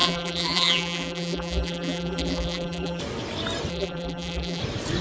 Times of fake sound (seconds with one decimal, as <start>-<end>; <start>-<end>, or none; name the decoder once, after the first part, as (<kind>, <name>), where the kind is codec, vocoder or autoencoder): 0.0-3.0 (vocoder, BigVGAN v2); 3.7-4.6

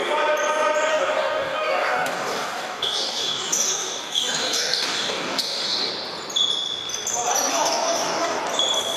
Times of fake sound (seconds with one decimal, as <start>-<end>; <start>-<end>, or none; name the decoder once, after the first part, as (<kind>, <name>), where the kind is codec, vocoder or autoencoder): 0.9-5.9 (codec, DAC); 7.5-8.4

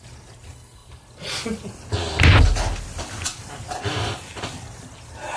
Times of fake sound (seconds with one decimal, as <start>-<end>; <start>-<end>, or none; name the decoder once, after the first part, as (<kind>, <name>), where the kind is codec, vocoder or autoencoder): none